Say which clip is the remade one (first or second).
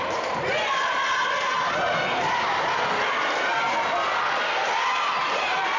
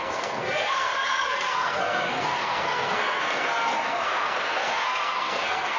second